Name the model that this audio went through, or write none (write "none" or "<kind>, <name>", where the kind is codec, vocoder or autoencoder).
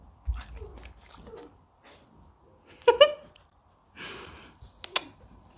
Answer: none